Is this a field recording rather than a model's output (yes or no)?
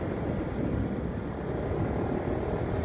yes